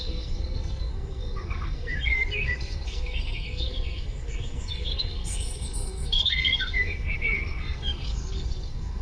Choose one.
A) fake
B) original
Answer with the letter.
A